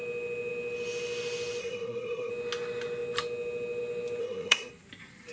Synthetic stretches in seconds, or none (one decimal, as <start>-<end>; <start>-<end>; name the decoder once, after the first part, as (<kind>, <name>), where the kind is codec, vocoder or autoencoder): 1.6-2.3 (codec, SNAC); 4.2-4.7